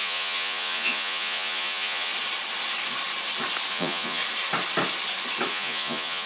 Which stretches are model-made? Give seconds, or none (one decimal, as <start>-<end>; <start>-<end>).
0.0-2.1; 3.7-4.2; 5.5-6.3